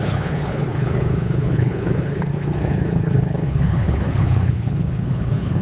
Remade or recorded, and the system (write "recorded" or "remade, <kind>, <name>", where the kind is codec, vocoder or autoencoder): remade, codec, HILCodec